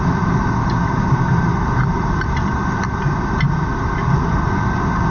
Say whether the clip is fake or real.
real